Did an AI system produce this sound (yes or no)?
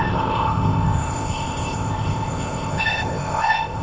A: yes